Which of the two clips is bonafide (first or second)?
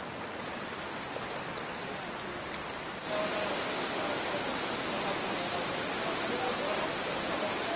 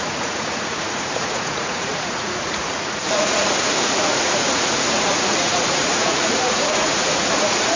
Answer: first